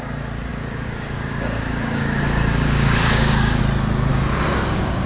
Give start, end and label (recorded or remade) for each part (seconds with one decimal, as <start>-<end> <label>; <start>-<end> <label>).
0.0-0.5 recorded; 0.5-3.6 remade; 3.6-4.1 recorded; 4.1-5.1 remade